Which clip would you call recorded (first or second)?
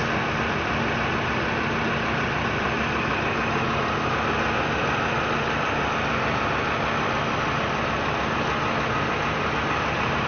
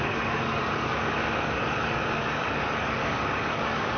first